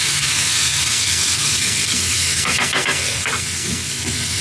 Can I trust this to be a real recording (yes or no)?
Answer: no